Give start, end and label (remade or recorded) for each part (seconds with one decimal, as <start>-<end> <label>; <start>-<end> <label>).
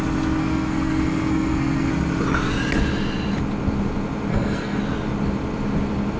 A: 0.0-0.4 recorded; 0.4-1.9 remade; 1.9-4.3 recorded; 4.3-4.8 remade; 4.8-6.2 recorded